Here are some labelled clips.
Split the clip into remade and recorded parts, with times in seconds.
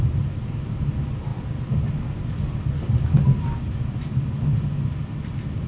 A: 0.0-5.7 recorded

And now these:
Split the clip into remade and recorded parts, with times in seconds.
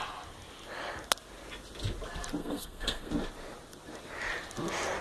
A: 0.0-2.4 recorded; 2.4-3.1 remade; 3.1-5.0 recorded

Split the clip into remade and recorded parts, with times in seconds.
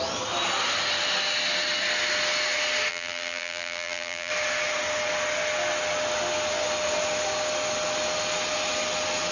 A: 0.0-2.9 recorded; 2.9-4.3 remade; 4.3-9.3 recorded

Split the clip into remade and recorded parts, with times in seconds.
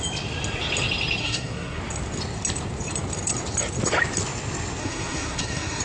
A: 0.0-1.2 recorded; 1.2-1.8 remade; 1.8-4.8 recorded; 4.8-5.8 remade